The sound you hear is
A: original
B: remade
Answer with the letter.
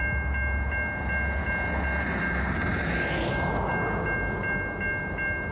A